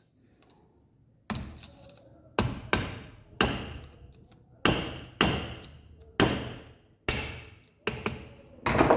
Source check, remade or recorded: recorded